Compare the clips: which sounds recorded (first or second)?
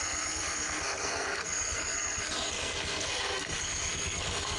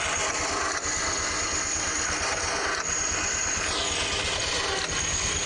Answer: second